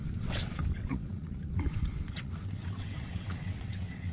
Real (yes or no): no